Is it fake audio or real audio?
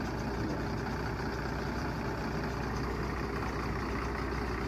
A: real